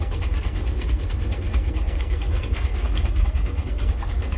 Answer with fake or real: fake